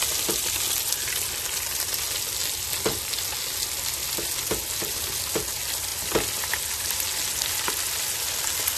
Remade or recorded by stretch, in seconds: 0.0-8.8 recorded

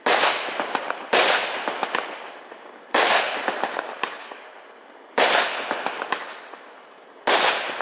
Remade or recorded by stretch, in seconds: 0.0-7.8 recorded

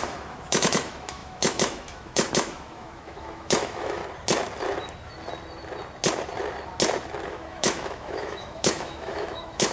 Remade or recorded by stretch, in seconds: 0.0-4.0 remade; 4.0-7.3 recorded; 7.3-9.7 remade